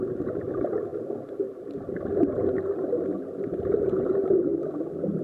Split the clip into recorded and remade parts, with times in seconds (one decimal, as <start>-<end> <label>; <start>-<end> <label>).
0.0-5.2 recorded

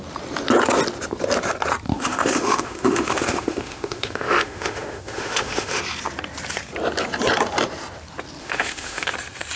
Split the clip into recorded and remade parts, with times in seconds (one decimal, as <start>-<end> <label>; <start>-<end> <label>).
0.0-1.9 recorded; 1.9-5.8 remade; 5.8-8.4 recorded; 8.4-9.1 remade; 9.1-9.6 recorded

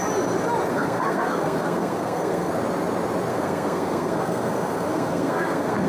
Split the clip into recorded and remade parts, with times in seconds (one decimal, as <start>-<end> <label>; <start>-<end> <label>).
0.0-0.7 recorded; 0.7-2.5 remade; 2.5-3.3 recorded; 3.3-5.9 remade

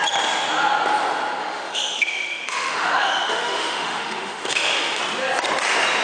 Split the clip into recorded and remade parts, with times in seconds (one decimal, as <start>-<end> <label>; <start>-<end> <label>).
0.0-1.4 recorded; 1.4-5.0 remade; 5.0-6.0 recorded

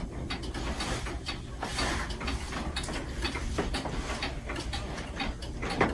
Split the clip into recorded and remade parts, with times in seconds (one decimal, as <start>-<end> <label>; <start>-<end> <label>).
0.0-5.9 recorded

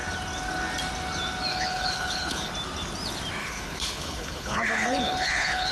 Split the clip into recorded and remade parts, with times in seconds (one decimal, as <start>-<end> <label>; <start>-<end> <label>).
0.0-1.5 recorded; 1.5-2.5 remade; 2.5-3.4 recorded; 3.4-5.7 remade

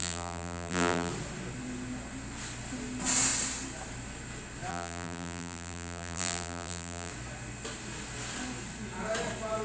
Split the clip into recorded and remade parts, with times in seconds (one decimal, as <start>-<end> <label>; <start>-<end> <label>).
0.0-1.1 remade; 1.1-4.7 recorded; 4.7-7.1 remade; 7.1-9.6 recorded